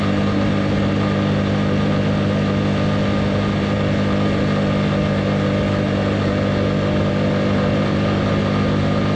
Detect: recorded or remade recorded